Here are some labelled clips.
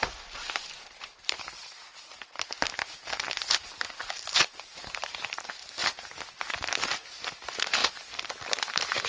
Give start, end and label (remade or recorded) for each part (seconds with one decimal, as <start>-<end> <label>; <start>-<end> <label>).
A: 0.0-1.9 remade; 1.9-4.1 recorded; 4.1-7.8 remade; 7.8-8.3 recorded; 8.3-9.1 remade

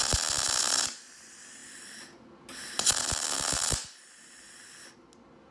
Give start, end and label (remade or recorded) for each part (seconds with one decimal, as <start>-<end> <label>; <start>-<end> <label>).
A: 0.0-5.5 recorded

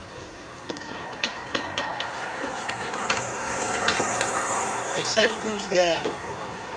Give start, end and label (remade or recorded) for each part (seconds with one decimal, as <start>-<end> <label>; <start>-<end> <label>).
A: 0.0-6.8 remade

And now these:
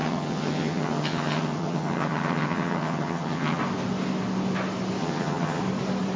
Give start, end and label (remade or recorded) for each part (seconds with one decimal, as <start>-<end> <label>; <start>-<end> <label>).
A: 0.0-3.6 remade; 3.6-5.0 recorded; 5.0-5.6 remade; 5.6-6.2 recorded

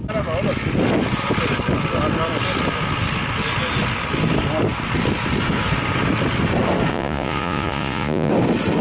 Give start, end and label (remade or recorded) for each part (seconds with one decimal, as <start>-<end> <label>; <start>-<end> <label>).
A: 0.0-6.9 recorded; 6.9-8.3 remade; 8.3-8.8 recorded